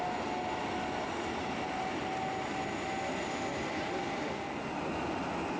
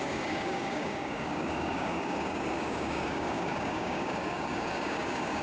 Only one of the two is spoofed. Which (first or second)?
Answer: second